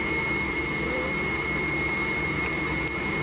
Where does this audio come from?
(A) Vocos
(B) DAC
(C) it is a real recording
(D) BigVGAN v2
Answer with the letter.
D